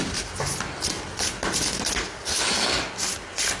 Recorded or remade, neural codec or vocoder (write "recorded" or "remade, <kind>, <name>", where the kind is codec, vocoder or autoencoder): recorded